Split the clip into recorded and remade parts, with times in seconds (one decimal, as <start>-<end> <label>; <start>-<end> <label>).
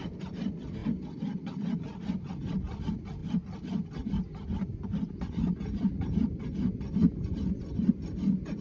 0.0-8.6 recorded